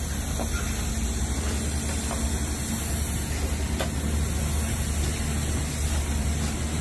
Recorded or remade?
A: recorded